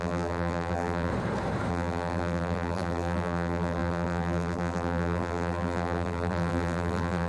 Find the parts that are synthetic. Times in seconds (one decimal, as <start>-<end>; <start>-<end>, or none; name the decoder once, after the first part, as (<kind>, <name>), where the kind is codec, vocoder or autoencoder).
0.0-1.1 (vocoder, BigVGAN v2); 1.7-7.3